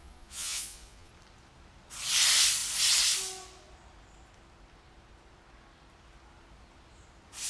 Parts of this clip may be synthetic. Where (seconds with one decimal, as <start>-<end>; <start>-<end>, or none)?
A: 0.0-1.1